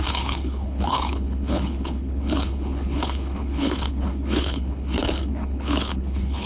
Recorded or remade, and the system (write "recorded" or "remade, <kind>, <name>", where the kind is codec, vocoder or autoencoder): remade, codec, HILCodec